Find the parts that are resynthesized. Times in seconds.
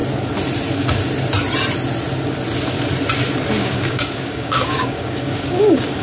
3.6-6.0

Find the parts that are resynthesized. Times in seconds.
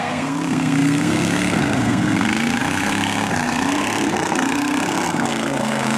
0.0-6.0